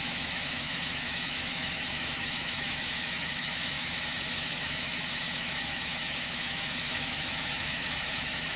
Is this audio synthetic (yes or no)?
yes